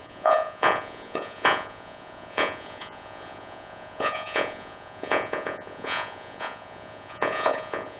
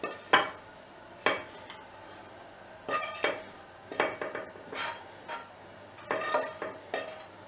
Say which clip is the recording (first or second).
second